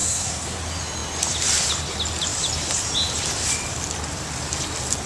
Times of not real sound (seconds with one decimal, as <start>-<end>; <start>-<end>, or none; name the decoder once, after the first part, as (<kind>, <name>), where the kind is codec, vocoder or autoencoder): 0.0-0.6 (codec, SNAC)